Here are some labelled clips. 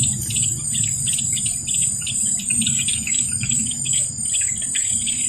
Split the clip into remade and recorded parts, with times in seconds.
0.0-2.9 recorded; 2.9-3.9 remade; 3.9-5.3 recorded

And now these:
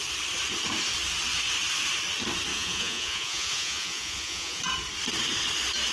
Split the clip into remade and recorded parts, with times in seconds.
0.0-2.5 recorded; 2.5-4.6 remade; 4.6-5.9 recorded

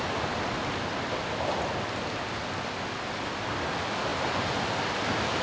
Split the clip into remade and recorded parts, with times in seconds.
0.0-5.4 recorded

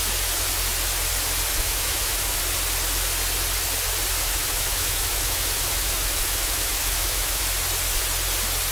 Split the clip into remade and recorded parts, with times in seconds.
0.0-1.5 recorded; 1.5-2.4 remade; 2.4-4.2 recorded; 4.2-7.4 remade; 7.4-8.7 recorded

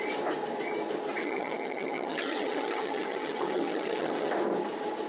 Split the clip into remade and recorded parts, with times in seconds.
0.0-1.2 recorded; 1.2-4.3 remade; 4.3-5.1 recorded

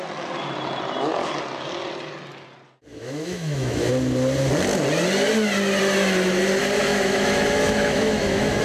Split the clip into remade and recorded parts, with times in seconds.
0.0-2.9 recorded; 2.9-3.9 remade; 3.9-6.9 recorded; 6.9-8.6 remade

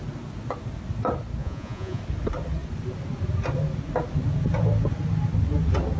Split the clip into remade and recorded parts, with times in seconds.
0.0-1.4 recorded; 1.4-2.0 remade; 2.0-6.0 recorded

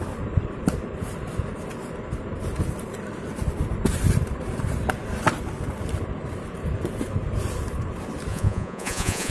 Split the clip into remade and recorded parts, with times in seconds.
0.0-8.3 recorded; 8.3-9.3 remade